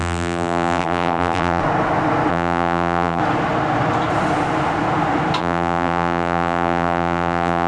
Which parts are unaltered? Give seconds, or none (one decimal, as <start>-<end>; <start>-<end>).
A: 1.6-2.3; 3.2-5.4